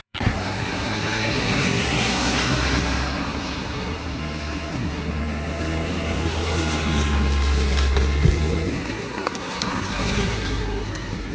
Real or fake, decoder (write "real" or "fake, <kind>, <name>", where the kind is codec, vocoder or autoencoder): fake, codec, SNAC